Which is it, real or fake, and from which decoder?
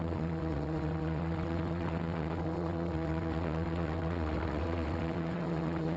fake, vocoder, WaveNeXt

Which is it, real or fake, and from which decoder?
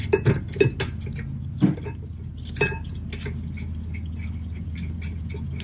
real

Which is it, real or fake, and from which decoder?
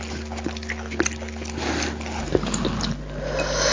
real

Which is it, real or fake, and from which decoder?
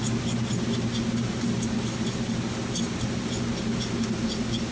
real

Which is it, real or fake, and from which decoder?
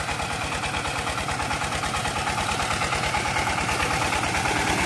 real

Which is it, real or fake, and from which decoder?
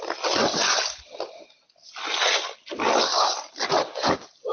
real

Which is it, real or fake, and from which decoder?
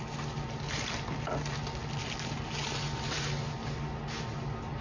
real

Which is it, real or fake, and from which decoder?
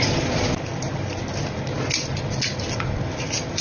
real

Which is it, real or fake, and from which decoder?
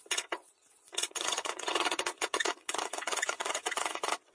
fake, vocoder, WaveNeXt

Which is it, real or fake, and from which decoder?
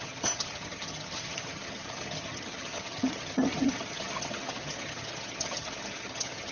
fake, vocoder, HiFi-GAN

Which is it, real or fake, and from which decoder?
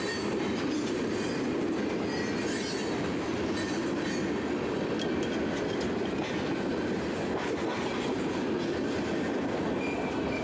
real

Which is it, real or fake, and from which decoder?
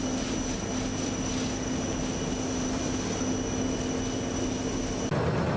real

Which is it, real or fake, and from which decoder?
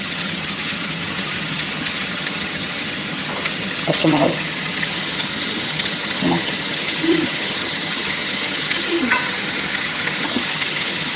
fake, vocoder, HiFi-GAN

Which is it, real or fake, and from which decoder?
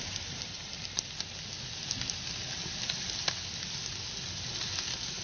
real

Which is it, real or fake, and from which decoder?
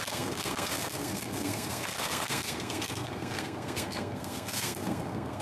fake, codec, SNAC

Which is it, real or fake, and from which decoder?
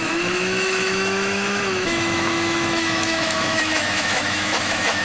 fake, autoencoder, DAC-VAE